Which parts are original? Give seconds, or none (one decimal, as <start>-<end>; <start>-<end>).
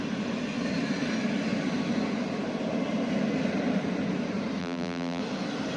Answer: 0.0-4.6; 5.2-5.8